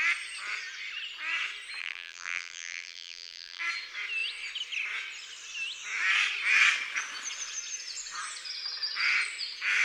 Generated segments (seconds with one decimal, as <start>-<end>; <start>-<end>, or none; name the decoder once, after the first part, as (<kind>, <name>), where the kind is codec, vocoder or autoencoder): 1.8-3.6 (vocoder, BigVGAN v2)